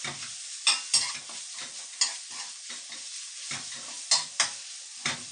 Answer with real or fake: real